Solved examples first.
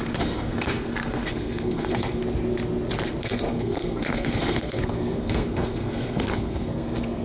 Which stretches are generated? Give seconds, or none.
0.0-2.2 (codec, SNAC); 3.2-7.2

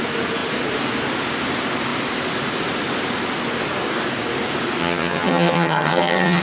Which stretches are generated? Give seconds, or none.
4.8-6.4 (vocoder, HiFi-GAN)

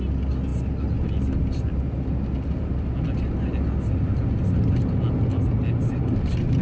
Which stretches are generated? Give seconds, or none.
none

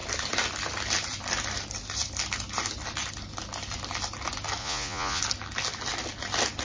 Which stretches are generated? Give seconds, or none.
4.6-5.2 (vocoder, Vocos)